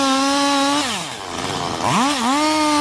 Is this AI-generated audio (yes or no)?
no